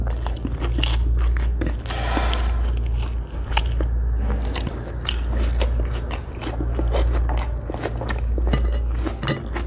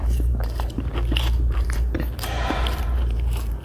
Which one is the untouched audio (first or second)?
first